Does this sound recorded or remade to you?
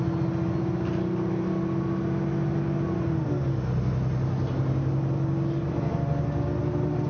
recorded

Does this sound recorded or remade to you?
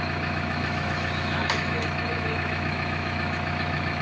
remade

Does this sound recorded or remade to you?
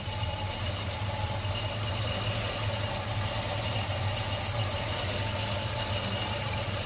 recorded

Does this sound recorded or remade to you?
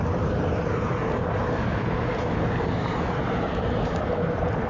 recorded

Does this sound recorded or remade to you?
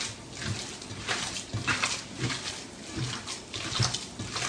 recorded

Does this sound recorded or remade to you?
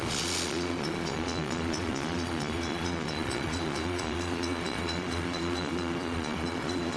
remade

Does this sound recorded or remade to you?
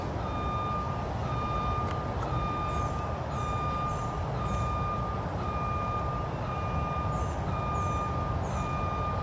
recorded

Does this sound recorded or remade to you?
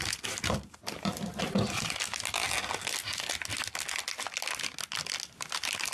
recorded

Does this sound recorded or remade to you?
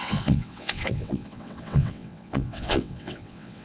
remade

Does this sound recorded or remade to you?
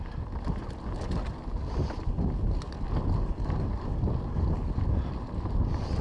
recorded